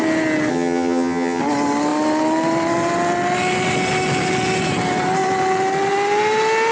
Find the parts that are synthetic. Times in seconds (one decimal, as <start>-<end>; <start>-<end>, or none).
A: 0.5-1.4